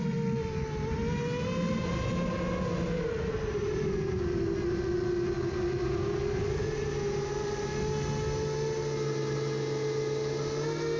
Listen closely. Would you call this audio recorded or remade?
recorded